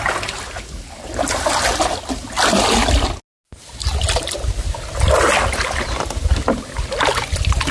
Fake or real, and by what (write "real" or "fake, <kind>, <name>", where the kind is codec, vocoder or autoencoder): real